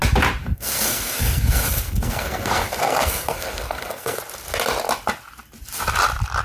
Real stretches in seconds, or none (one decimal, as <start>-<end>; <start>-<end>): 0.0-0.4; 4.2-6.4